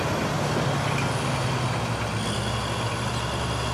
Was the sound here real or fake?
real